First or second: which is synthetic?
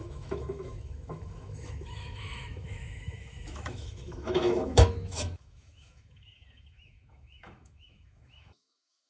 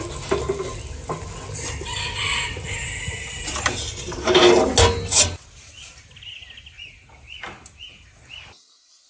first